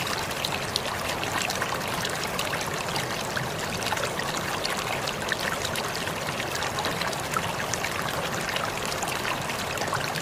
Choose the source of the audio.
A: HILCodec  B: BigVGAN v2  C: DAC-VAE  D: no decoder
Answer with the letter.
D